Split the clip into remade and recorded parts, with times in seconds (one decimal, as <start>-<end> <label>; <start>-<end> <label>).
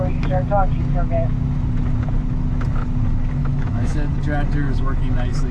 0.0-3.4 recorded; 3.4-4.1 remade; 4.1-5.5 recorded